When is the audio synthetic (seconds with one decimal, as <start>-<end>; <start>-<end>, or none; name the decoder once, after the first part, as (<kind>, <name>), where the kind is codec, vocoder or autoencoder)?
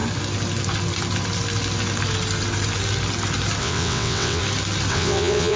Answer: 3.6-4.4 (vocoder, WaveNeXt); 4.9-5.6